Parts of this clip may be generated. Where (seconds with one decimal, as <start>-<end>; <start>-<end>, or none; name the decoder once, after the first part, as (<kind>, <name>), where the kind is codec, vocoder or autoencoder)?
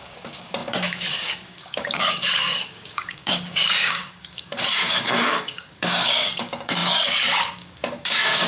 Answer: 0.0-8.5 (codec, DAC)